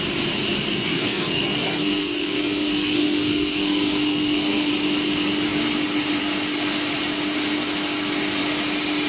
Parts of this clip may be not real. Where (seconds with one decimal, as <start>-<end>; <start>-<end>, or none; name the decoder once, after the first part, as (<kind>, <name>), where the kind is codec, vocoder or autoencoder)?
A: 0.7-4.7 (codec, SNAC)